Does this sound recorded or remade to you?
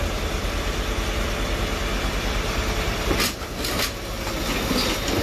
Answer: recorded